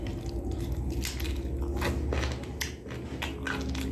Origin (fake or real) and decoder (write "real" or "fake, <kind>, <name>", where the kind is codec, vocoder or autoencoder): real